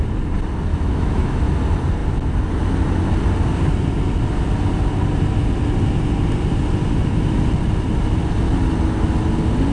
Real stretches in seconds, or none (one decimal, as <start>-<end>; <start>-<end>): 0.0-0.7; 1.4-9.7